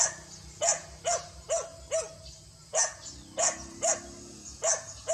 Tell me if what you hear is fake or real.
real